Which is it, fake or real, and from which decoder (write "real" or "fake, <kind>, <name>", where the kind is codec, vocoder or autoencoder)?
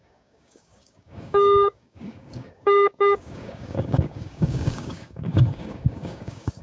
fake, codec, DAC